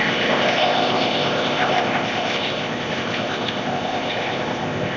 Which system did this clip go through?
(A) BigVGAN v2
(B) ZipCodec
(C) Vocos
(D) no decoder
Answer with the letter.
B